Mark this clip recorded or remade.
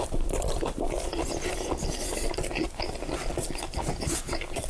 recorded